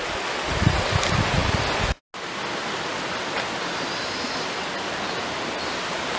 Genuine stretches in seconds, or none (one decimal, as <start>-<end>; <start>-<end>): 0.0-6.2